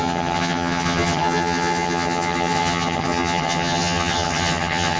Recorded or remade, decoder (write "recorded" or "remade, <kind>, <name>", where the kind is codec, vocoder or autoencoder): remade, vocoder, HiFi-GAN